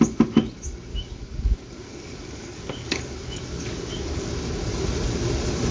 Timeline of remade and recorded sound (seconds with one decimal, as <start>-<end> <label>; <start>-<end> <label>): 0.0-0.9 recorded; 0.9-4.3 remade; 4.3-5.7 recorded